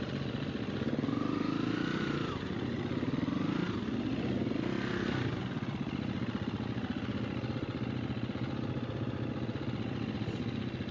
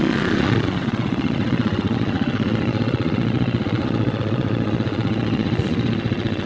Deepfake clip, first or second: second